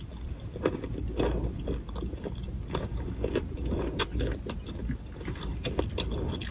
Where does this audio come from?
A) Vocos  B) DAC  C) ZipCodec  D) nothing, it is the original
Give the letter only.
D